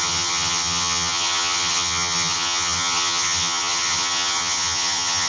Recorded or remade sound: remade